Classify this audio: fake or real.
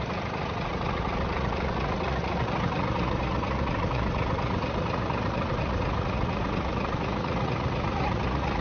fake